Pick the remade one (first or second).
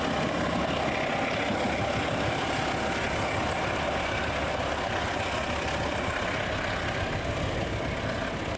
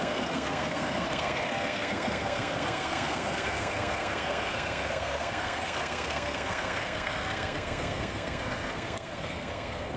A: second